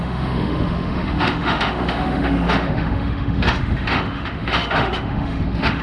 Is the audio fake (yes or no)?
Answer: yes